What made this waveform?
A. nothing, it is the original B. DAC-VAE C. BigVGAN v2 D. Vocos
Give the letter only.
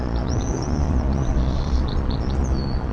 D